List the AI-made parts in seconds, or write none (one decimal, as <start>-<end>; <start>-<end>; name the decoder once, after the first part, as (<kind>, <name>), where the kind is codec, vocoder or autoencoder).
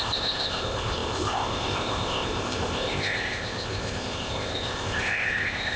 0.0-5.8 (codec, ZipCodec)